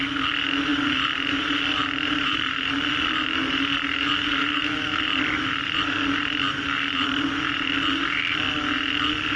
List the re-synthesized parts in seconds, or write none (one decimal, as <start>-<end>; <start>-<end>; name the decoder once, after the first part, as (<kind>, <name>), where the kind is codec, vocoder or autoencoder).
4.4-5.0 (autoencoder, DAC-VAE)